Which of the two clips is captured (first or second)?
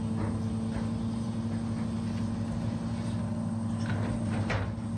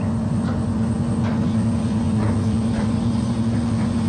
first